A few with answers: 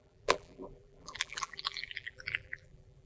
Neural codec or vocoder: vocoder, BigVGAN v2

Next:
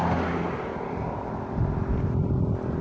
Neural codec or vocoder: none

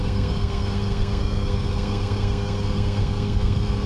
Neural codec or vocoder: codec, SNAC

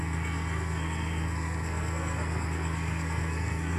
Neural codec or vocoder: codec, SNAC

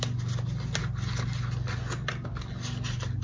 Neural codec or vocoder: none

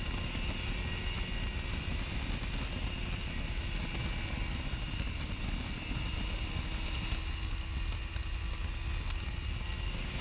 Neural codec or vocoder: none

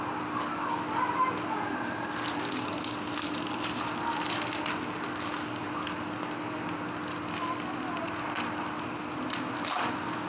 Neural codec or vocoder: none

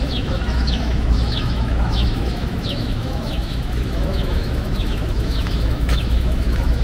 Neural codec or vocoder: autoencoder, DAC-VAE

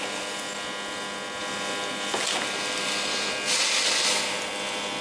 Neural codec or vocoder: none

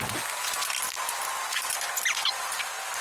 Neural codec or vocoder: none